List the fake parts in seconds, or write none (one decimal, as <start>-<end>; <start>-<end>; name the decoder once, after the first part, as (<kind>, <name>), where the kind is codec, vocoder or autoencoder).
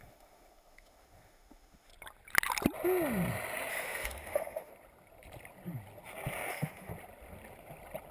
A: 0.0-1.9 (autoencoder, DAC-VAE); 3.7-4.7; 6.5-6.9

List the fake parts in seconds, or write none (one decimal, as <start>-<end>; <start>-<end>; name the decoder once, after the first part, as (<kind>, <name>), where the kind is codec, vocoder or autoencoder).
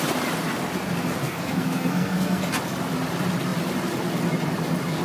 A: 1.2-2.4 (codec, SNAC)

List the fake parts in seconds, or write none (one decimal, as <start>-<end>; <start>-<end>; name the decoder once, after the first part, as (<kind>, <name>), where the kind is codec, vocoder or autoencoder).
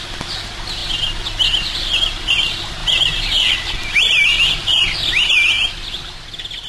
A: none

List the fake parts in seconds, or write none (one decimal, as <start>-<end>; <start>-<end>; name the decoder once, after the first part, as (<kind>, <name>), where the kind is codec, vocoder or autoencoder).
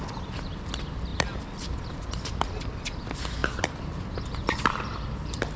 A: 3.4-5.6 (vocoder, BigVGAN v2)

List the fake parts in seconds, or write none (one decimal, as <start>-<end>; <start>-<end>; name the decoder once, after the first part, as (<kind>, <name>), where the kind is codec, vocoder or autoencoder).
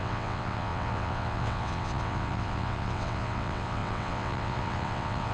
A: 0.0-5.3 (vocoder, WaveNeXt)